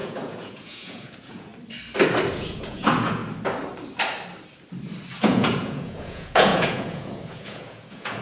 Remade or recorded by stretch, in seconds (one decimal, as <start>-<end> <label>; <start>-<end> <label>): 0.0-1.5 remade; 1.5-2.3 recorded; 2.3-3.2 remade; 3.2-5.2 recorded; 5.2-8.2 remade